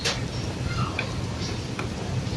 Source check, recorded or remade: remade